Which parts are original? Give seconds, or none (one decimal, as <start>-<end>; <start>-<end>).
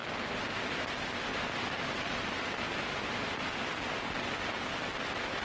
0.0-5.4